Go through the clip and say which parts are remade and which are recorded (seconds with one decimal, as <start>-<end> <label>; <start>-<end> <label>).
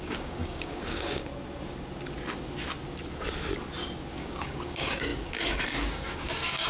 0.0-1.3 remade; 1.3-4.1 recorded; 4.1-6.7 remade